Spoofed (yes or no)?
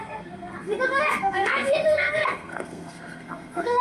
yes